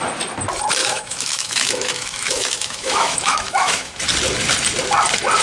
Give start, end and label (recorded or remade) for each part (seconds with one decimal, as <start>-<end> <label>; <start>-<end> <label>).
0.0-0.8 recorded; 0.8-4.0 remade; 4.0-5.4 recorded